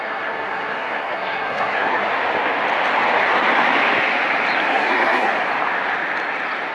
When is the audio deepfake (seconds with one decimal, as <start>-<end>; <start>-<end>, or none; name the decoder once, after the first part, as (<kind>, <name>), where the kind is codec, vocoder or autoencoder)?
0.0-2.1 (codec, SNAC); 4.7-5.3